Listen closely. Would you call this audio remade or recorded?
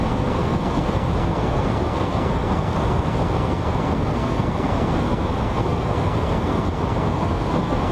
remade